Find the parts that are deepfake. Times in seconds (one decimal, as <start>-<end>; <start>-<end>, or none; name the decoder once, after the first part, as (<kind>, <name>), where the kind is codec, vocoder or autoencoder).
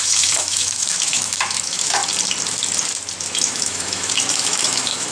0.0-2.0 (autoencoder, DAC-VAE); 3.2-5.1